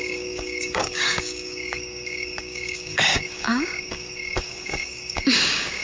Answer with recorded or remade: remade